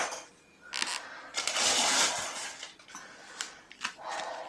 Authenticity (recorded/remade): recorded